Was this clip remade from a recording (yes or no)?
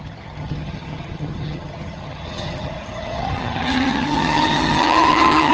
yes